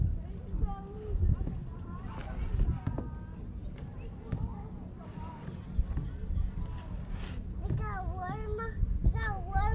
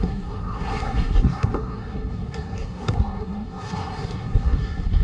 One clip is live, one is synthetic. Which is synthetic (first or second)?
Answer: second